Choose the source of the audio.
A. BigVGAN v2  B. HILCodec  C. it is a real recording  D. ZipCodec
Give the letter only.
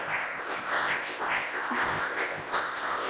D